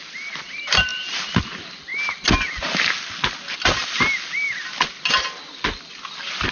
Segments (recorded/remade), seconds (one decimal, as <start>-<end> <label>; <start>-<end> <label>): 0.0-1.9 remade; 1.9-5.8 recorded; 5.8-6.5 remade